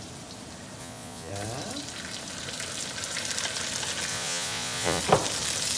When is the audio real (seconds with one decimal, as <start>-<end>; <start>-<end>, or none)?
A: 0.0-0.8; 1.3-4.1; 5.0-5.8